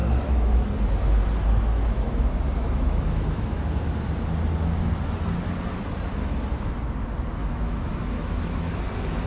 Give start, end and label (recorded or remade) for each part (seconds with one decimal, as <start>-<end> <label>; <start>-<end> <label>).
0.0-0.7 remade; 0.7-2.6 recorded; 2.6-3.6 remade; 3.6-7.4 recorded; 7.4-8.8 remade; 8.8-9.3 recorded

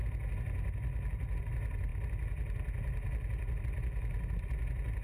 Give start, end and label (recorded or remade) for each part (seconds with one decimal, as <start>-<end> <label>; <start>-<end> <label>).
0.0-5.0 recorded

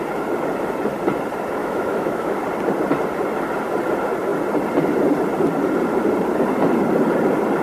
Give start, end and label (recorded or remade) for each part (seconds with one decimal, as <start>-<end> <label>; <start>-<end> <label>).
0.0-1.6 recorded; 1.6-2.4 remade; 2.4-7.6 recorded

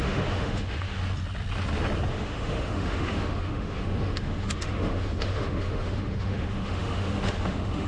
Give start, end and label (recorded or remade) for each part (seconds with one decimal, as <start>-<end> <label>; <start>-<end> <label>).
0.0-1.0 remade; 1.0-2.1 recorded; 2.1-7.9 remade

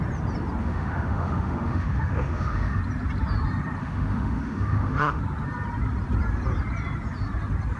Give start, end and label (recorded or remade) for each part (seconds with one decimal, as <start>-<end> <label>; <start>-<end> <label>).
0.0-0.6 recorded; 0.6-2.8 remade; 2.8-3.8 recorded; 3.8-5.2 remade; 5.2-7.8 recorded

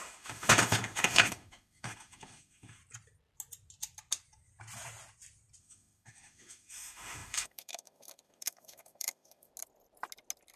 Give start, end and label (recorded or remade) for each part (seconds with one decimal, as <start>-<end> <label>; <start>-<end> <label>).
0.0-2.8 remade; 2.8-5.6 recorded; 5.6-9.5 remade; 9.5-10.6 recorded

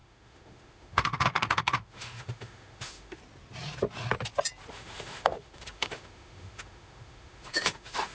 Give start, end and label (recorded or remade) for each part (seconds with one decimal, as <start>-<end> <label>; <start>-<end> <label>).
0.0-3.2 remade; 3.2-4.7 recorded; 4.7-8.1 remade

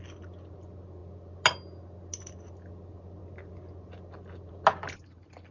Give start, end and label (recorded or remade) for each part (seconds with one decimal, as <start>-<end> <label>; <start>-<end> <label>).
0.0-5.5 recorded